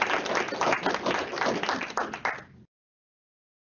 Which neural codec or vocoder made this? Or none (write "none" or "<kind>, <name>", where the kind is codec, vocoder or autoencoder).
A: none